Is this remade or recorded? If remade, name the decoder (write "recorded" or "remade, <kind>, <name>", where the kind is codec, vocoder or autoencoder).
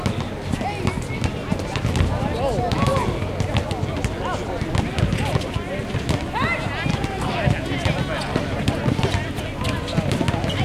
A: recorded